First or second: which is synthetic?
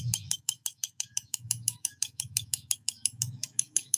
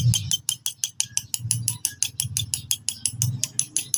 first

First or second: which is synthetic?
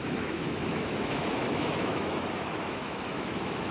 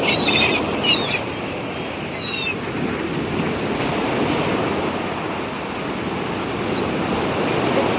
first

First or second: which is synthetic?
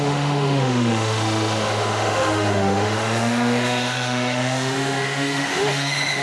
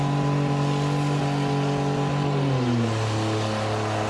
first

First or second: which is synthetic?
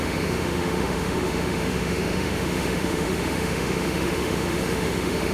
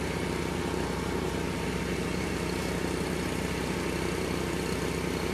first